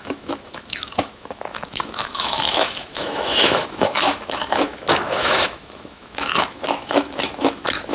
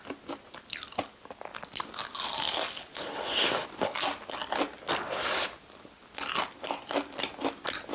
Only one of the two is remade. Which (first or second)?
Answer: first